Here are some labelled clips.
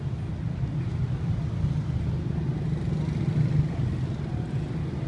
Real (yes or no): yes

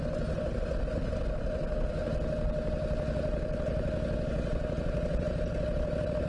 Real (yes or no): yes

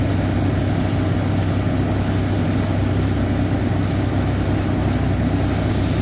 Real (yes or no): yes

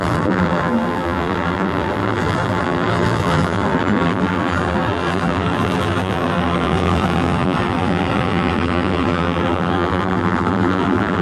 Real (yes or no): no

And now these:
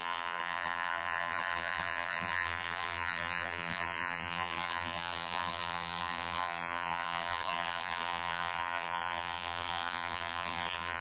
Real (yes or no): no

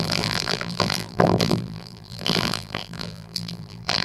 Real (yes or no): no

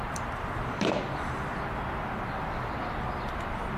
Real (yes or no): no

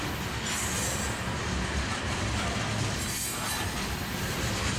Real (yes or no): yes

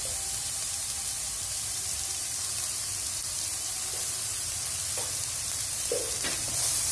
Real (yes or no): no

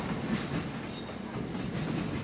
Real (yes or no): yes